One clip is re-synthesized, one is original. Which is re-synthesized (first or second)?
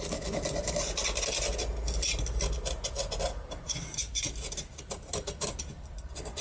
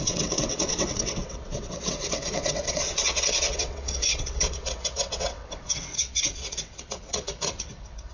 second